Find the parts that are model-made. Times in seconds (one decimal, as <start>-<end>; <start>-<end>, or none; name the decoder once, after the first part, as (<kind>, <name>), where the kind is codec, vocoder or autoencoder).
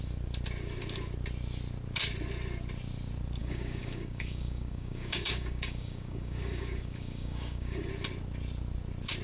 3.4-7.9 (codec, DAC)